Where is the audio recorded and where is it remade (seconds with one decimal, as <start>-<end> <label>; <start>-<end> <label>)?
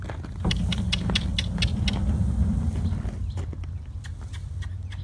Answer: 0.0-5.0 recorded